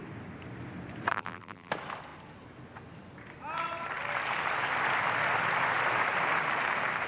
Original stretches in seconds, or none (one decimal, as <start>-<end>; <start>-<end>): 0.0-1.1; 1.7-7.1